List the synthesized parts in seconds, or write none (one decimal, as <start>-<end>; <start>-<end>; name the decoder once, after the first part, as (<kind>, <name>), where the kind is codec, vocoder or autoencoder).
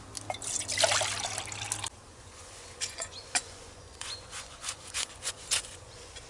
2.1-6.3 (vocoder, Vocos)